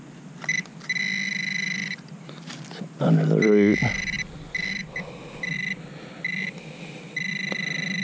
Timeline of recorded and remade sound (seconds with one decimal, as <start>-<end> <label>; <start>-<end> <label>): 0.0-8.0 recorded